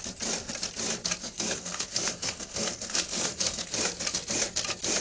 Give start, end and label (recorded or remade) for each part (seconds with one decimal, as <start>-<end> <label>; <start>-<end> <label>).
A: 0.0-1.2 recorded; 1.2-3.7 remade; 3.7-5.0 recorded